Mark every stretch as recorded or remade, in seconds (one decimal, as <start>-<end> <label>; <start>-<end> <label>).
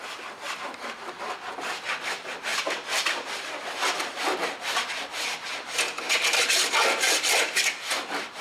0.0-2.5 recorded; 2.5-3.5 remade; 3.5-8.4 recorded